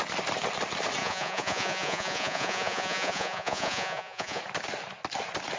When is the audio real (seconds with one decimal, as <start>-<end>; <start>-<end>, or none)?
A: 0.0-1.0; 4.4-5.6